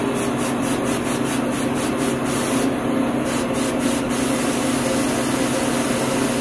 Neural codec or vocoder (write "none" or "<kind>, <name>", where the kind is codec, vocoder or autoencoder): none